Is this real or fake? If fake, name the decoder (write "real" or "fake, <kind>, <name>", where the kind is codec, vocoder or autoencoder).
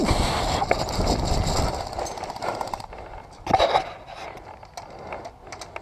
real